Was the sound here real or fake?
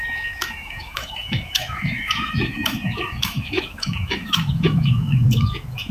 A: fake